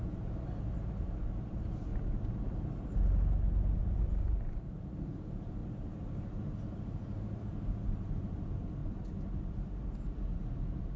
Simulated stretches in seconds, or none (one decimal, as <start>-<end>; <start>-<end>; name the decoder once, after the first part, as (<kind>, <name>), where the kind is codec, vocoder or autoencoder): 0.0-1.9 (vocoder, BigVGAN v2); 3.8-5.6; 6.6-8.8; 9.5-11.0